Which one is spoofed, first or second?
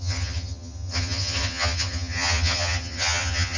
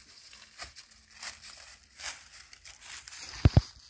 first